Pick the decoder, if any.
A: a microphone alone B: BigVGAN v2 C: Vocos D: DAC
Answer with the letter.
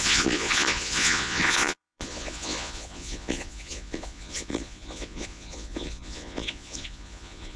C